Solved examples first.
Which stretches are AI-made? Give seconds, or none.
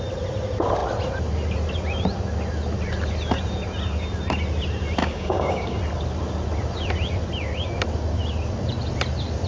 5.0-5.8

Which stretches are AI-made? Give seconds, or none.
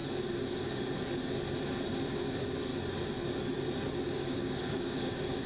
2.1-2.7; 4.2-5.5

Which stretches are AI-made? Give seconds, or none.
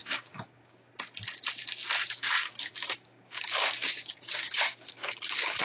0.0-0.9; 2.0-5.6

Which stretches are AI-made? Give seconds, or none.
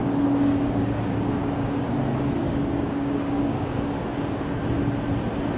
0.0-1.9; 2.4-4.6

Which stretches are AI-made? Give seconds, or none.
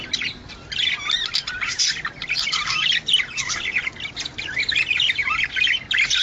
none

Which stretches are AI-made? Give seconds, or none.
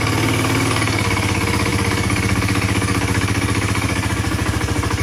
0.0-5.0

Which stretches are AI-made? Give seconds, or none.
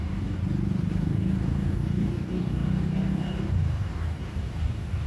0.0-0.4; 0.9-5.1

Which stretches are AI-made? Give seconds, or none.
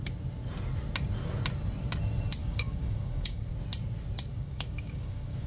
2.4-3.5; 4.3-5.5